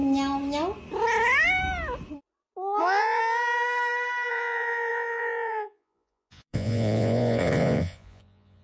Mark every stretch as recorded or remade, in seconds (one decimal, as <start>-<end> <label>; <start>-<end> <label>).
0.0-2.8 recorded; 2.8-3.2 remade; 3.2-4.3 recorded; 4.3-8.6 remade